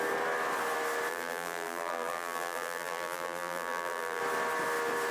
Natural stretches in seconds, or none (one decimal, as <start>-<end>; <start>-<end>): 0.0-1.1; 4.2-5.1